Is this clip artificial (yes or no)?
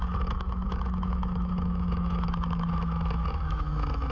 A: yes